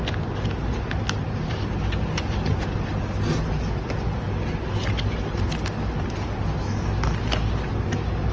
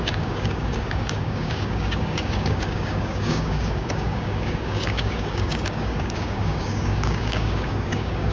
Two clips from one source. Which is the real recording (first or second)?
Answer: first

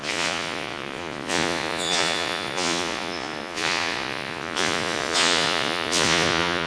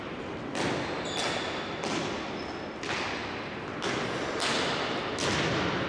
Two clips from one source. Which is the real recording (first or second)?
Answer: second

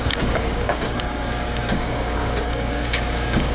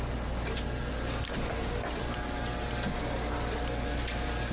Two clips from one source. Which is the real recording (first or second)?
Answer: second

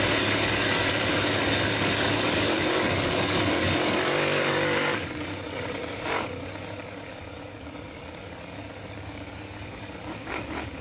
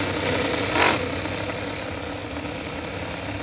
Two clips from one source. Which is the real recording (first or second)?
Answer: second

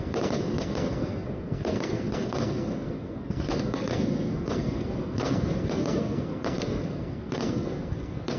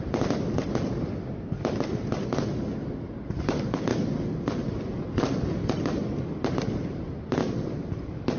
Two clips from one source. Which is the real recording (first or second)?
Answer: second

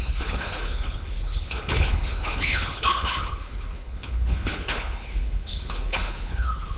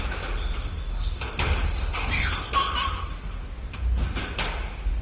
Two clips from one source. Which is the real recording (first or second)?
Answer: second